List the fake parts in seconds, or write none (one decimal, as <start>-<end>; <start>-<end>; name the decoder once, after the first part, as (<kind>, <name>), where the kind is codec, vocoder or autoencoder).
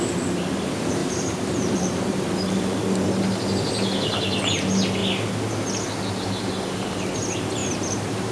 1.0-2.3 (vocoder, BigVGAN v2); 7.6-8.3